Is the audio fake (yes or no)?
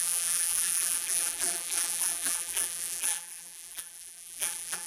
yes